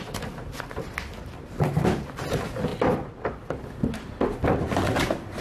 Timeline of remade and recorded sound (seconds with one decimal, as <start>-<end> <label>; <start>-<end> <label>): 0.0-5.4 recorded